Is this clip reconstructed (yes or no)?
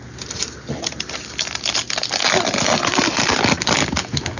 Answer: no